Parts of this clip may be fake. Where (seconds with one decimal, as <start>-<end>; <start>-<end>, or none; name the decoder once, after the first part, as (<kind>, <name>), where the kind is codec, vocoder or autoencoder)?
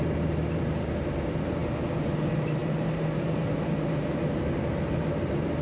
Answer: 0.0-5.6 (vocoder, BigVGAN v2)